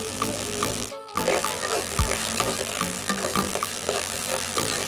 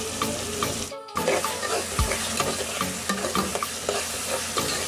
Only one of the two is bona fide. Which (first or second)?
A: second